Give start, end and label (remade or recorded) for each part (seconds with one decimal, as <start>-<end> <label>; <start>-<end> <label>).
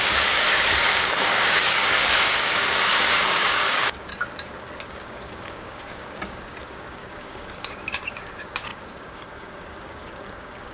0.0-4.1 remade; 4.1-4.9 recorded; 4.9-10.7 remade